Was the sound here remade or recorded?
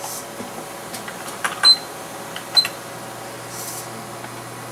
recorded